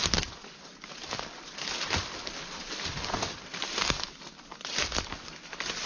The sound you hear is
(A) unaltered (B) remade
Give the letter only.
A